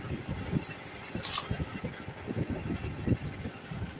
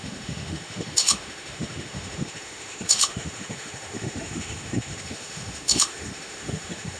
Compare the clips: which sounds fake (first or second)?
second